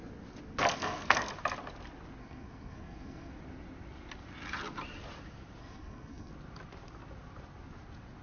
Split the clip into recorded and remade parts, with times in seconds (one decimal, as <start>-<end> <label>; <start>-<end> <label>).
0.0-0.7 recorded; 0.7-1.3 remade; 1.3-2.2 recorded; 2.2-3.3 remade; 3.3-5.6 recorded; 5.6-6.3 remade; 6.3-8.2 recorded